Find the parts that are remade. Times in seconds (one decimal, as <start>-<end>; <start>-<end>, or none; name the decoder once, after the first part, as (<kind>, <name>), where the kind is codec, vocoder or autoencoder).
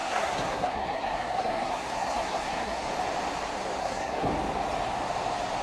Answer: 0.0-2.9 (codec, SNAC); 3.8-4.3